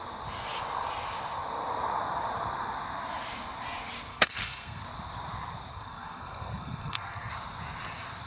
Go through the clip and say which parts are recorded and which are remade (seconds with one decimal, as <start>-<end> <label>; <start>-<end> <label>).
0.0-4.1 recorded; 4.1-4.8 remade; 4.8-5.7 recorded; 5.7-7.3 remade; 7.3-8.3 recorded